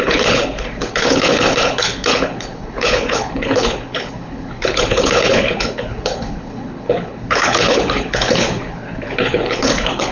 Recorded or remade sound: remade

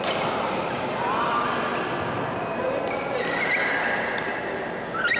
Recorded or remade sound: recorded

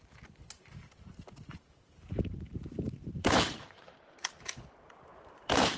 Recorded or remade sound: remade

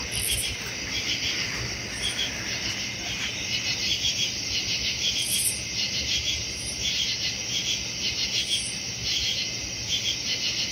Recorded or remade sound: recorded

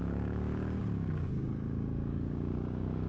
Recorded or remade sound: remade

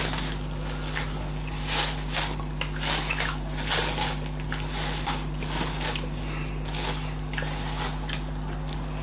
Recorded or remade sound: recorded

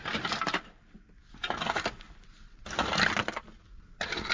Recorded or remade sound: recorded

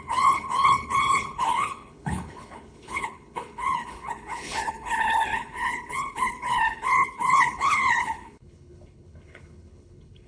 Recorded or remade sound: remade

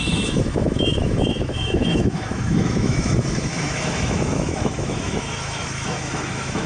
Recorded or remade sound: remade